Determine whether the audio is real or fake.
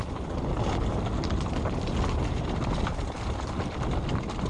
real